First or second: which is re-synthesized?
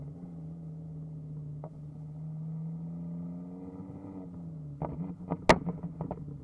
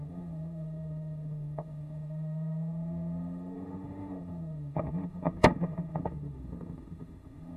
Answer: second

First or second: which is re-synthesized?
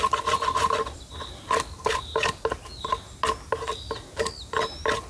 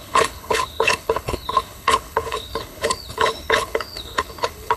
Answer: second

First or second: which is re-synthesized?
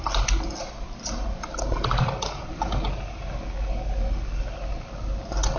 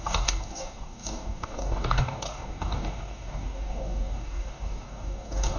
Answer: second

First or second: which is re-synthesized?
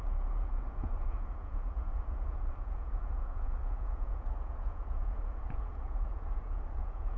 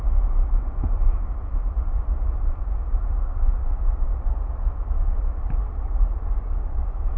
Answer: first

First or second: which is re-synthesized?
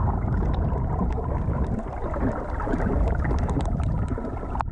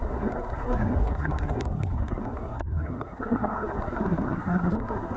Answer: second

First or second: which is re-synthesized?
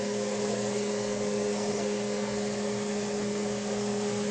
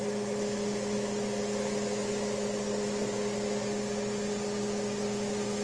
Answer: first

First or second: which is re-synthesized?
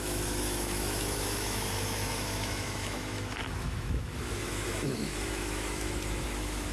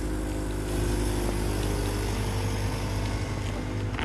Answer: first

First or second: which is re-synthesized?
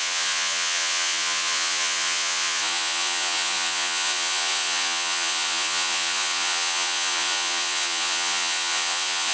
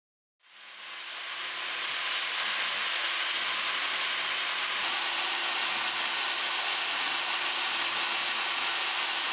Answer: first